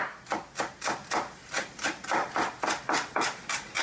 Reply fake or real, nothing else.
real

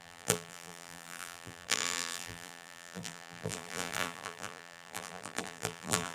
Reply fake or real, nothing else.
fake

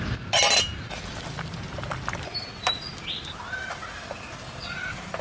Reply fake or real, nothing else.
real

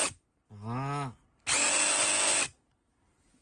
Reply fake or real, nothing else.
real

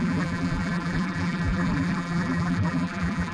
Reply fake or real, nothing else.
fake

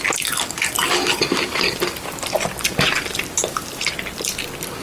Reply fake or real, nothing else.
real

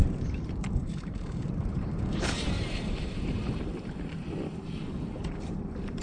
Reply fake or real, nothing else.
fake